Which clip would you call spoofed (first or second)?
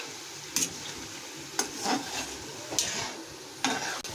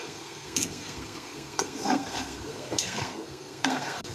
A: second